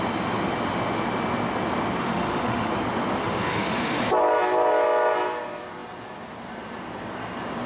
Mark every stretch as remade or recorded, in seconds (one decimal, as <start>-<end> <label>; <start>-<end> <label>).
0.0-2.0 recorded; 2.0-2.7 remade; 2.7-3.2 recorded; 3.2-4.0 remade; 4.0-7.7 recorded